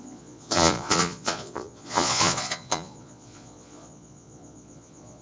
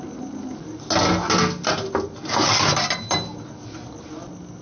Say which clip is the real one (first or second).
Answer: second